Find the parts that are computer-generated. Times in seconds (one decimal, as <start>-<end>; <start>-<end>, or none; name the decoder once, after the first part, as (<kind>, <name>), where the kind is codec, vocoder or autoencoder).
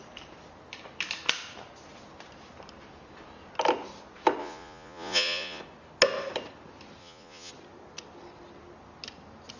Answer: 4.4-5.6 (vocoder, Vocos); 7.0-7.5